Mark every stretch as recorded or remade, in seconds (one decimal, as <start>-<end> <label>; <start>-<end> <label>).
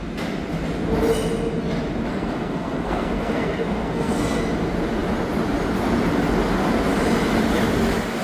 0.0-2.1 recorded; 2.1-4.4 remade; 4.4-8.2 recorded